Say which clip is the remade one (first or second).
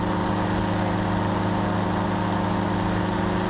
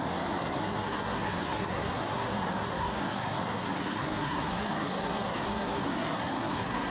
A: second